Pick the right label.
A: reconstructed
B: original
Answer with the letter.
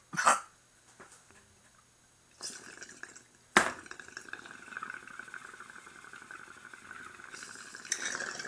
B